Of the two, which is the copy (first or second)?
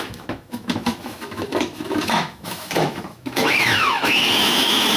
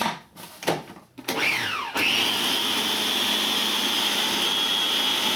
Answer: first